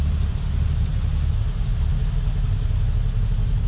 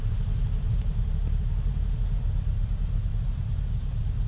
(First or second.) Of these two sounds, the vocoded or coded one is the second